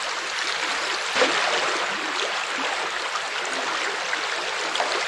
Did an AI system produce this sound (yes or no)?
no